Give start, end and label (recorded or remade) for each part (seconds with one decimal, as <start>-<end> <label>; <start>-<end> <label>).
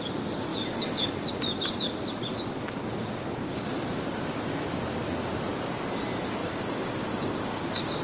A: 0.0-6.4 recorded; 6.4-8.0 remade